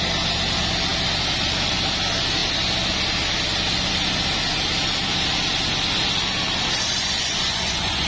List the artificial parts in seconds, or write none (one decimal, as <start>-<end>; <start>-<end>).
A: 6.9-8.1